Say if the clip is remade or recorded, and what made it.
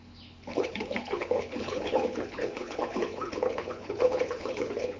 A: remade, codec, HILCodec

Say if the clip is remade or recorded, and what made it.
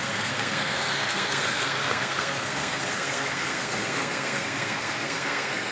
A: remade, codec, SNAC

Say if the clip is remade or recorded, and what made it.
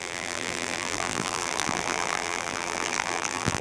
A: remade, vocoder, BigVGAN v2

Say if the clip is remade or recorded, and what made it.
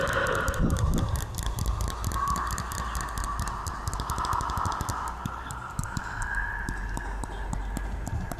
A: recorded